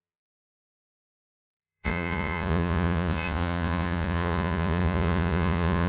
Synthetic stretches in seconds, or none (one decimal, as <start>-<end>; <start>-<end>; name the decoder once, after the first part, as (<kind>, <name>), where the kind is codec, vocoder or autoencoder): 0.0-5.9 (vocoder, Vocos)